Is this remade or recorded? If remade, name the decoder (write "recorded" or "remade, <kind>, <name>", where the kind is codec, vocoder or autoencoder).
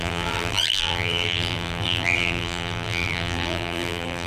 remade, vocoder, BigVGAN v2